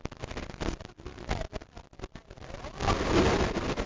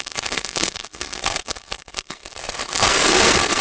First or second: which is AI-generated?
second